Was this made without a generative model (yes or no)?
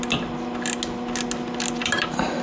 yes